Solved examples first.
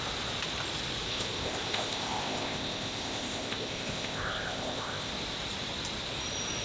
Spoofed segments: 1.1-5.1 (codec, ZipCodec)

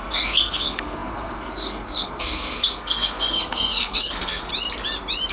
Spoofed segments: 0.0-4.5 (codec, SNAC)

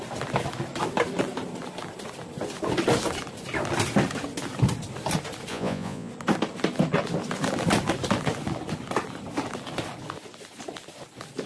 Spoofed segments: 5.5-6.1 (vocoder, Vocos)

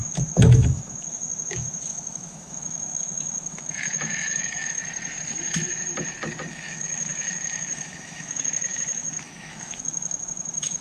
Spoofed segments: 0.0-4.8 (autoencoder, DAC-VAE); 6.5-10.8